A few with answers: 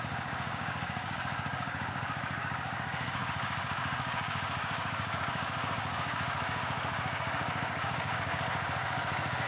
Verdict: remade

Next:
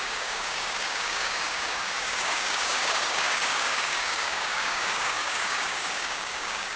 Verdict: remade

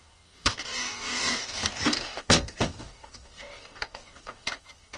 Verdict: remade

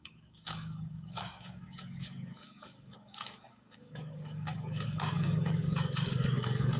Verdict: remade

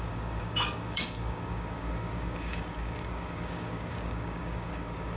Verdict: remade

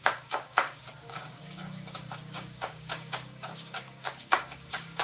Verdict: remade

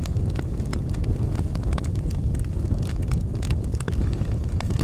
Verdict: remade